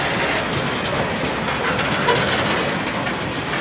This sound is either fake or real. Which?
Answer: real